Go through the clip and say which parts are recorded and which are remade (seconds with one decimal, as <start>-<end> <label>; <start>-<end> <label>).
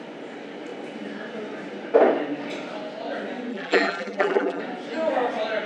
0.0-3.5 recorded; 3.5-4.6 remade; 4.6-5.7 recorded